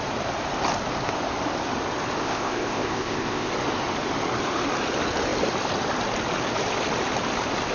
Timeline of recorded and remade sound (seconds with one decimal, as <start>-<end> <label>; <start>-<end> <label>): 0.0-2.2 recorded; 2.2-3.5 remade; 3.5-7.7 recorded